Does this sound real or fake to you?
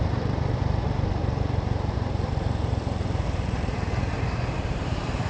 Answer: fake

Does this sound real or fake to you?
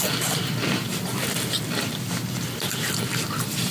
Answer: fake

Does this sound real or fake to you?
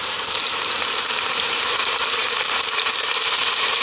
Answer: fake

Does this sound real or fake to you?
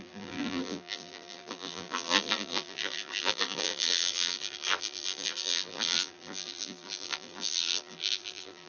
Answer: fake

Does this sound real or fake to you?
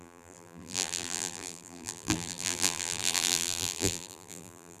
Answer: fake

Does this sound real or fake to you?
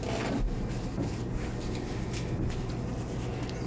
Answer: real